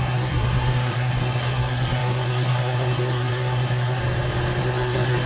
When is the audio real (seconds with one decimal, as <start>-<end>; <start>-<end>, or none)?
4.0-4.6